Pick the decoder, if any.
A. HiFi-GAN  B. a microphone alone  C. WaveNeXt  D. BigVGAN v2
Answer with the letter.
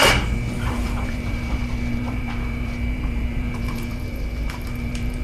D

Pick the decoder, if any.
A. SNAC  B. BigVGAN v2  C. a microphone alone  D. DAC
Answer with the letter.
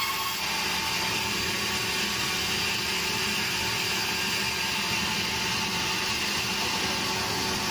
C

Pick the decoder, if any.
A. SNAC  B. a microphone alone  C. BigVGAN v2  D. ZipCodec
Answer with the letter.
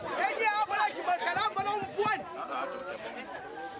B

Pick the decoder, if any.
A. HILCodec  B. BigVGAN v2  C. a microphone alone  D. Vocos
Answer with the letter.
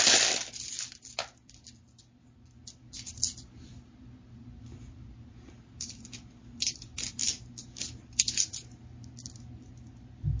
C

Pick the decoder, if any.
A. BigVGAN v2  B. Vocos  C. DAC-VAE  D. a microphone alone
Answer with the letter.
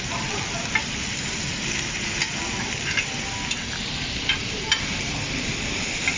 A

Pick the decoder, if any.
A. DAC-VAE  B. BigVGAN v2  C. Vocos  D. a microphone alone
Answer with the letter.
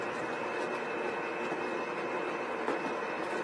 B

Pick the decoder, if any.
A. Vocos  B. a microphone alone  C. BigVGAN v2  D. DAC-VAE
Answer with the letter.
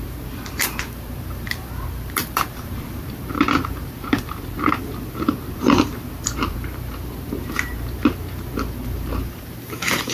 C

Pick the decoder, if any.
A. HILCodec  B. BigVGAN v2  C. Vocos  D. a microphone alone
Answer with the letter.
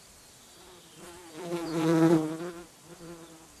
B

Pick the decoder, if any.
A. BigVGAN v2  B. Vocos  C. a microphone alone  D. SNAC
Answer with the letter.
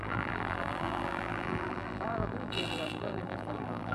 A